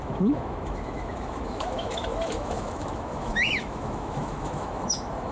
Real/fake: fake